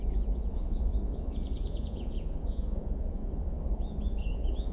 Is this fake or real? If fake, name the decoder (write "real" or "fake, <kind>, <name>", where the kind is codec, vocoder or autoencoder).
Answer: fake, vocoder, Vocos